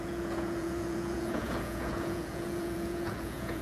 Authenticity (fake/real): fake